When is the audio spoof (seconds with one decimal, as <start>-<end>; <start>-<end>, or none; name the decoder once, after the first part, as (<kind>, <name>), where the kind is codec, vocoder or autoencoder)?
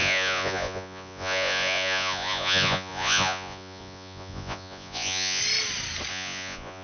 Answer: 0.0-5.4 (vocoder, Vocos); 6.1-6.8